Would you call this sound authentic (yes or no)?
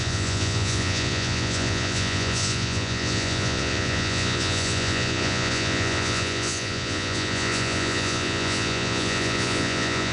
no